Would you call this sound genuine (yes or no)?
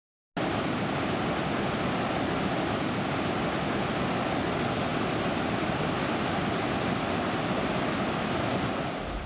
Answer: yes